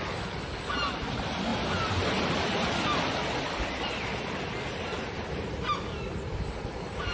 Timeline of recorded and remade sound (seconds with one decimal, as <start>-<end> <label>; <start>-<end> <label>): 0.0-7.1 recorded